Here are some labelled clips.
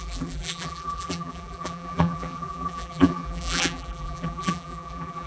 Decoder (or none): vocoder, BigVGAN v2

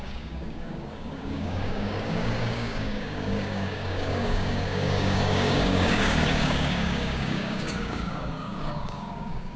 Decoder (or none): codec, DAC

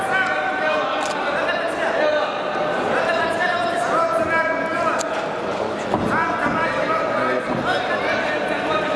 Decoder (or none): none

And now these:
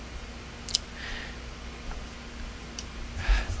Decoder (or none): none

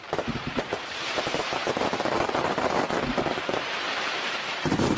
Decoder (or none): vocoder, BigVGAN v2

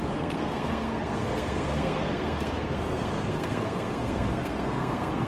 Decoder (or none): codec, SNAC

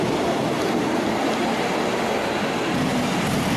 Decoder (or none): none